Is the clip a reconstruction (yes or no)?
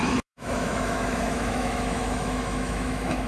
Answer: yes